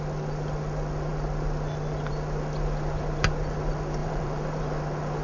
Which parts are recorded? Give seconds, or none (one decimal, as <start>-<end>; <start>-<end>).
0.0-4.0; 4.6-5.2